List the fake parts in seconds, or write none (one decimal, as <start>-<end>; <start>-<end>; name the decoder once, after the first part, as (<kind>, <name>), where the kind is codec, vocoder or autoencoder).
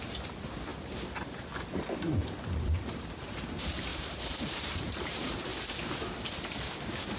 0.0-0.7 (vocoder, BigVGAN v2); 2.5-5.5